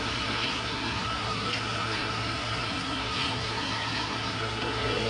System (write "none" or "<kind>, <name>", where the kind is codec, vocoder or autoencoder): codec, SNAC